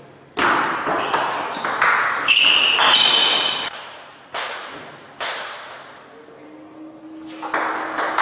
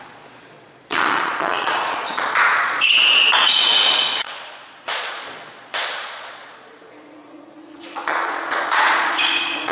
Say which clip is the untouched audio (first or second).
first